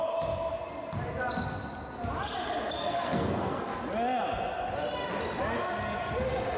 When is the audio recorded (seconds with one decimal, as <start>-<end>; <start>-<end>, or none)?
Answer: 0.0-2.8; 3.6-6.6